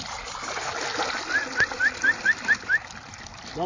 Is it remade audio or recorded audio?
recorded